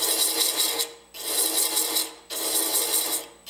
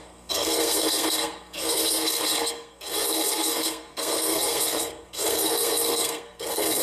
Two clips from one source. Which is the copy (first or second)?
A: second